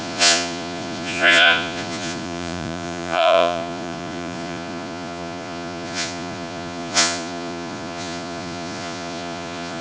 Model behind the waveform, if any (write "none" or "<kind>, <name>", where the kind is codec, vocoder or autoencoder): vocoder, Vocos